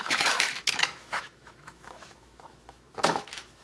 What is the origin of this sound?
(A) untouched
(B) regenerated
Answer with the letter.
B